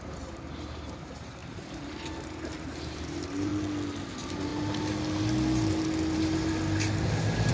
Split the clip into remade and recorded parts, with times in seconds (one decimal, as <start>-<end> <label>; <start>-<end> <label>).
0.0-3.5 remade; 3.5-4.1 recorded; 4.1-4.5 remade; 4.5-7.5 recorded